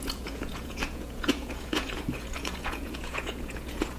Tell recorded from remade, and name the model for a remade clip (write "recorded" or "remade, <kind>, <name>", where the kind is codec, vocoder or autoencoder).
remade, vocoder, Vocos